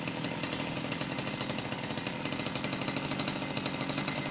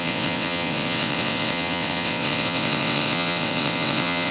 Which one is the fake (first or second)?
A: second